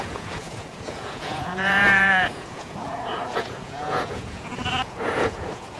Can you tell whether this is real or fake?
fake